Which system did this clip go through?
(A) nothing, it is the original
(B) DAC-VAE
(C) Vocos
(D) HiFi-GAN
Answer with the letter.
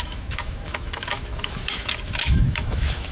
B